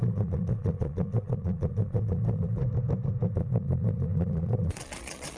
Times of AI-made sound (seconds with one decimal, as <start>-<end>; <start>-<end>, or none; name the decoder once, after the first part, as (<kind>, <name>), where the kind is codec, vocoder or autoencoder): 0.0-2.6 (vocoder, Vocos); 3.3-5.4